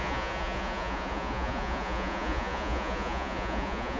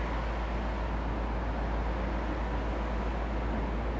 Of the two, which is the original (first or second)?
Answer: second